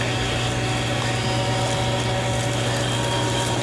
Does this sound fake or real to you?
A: real